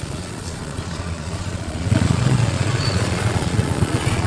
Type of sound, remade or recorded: remade